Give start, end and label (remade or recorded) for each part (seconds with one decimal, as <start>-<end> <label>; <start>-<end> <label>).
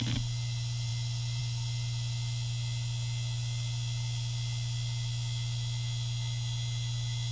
0.0-7.3 recorded